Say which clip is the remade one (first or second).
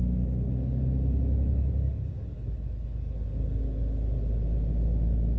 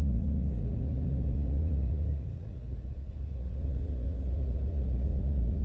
second